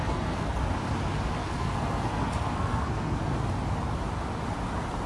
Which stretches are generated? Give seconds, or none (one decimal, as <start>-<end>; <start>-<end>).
0.0-0.6; 1.4-3.2